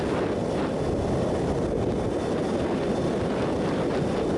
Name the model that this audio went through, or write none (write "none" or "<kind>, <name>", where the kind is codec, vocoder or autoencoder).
none